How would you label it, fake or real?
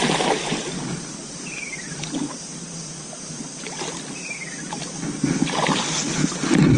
real